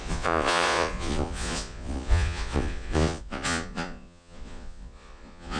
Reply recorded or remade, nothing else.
remade